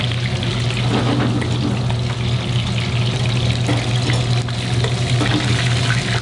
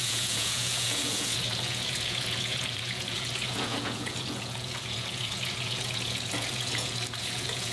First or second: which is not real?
second